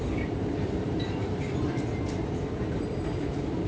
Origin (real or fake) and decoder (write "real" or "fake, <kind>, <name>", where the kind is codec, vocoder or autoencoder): fake, vocoder, BigVGAN v2